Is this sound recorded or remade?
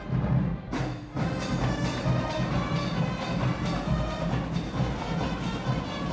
recorded